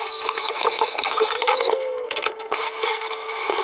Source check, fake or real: fake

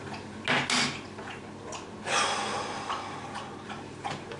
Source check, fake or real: real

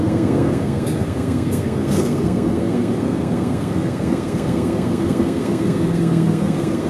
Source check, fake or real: fake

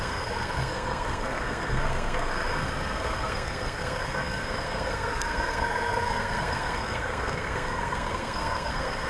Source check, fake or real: fake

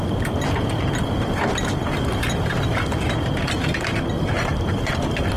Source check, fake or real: real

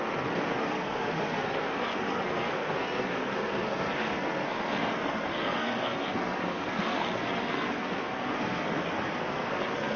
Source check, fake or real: fake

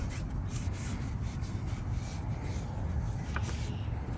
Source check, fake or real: real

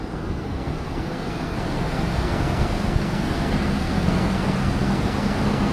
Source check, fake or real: fake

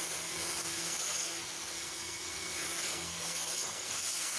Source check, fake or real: fake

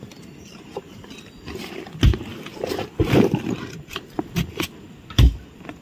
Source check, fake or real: real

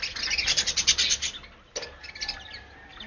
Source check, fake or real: real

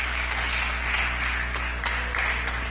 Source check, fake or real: real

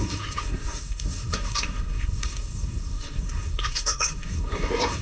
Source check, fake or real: fake